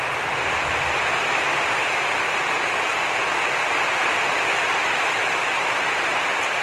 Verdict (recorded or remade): recorded